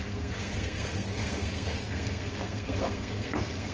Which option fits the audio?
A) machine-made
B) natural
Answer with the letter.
A